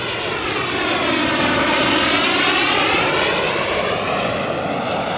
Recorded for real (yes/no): yes